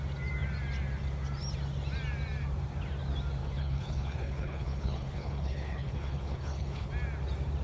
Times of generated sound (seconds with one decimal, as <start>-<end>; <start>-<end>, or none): 3.4-6.9